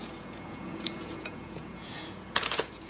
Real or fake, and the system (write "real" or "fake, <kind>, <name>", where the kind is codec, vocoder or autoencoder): fake, vocoder, Vocos